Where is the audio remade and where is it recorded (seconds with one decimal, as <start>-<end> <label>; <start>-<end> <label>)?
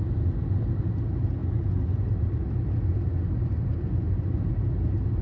0.0-5.2 recorded